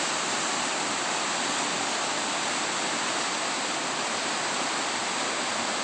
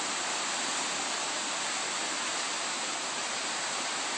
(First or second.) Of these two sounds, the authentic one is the first